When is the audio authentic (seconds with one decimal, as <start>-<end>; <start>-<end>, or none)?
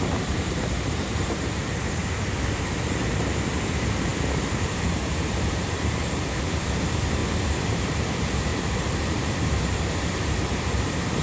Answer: 2.0-2.5; 7.2-7.7